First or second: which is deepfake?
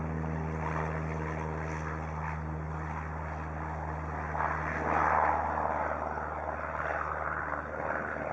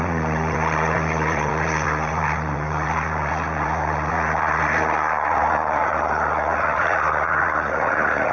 second